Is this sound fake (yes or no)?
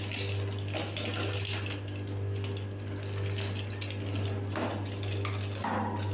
no